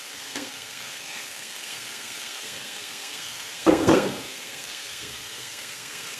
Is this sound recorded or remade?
remade